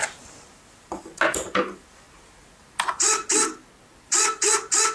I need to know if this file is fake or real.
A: real